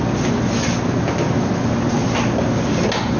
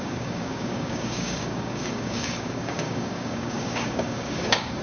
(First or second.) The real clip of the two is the first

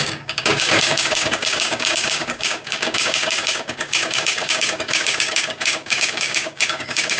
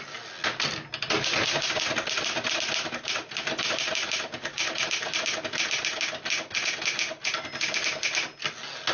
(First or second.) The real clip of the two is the second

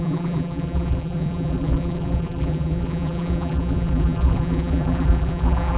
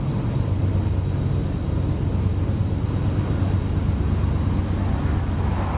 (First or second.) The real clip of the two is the second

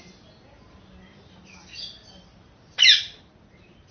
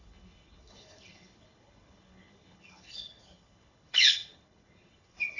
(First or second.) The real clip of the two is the first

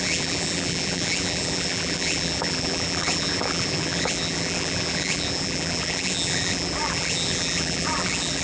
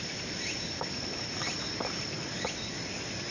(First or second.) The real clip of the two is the second